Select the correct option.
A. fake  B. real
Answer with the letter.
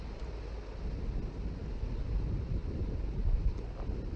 B